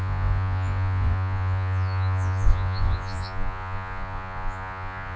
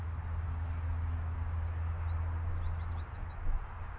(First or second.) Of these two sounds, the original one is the second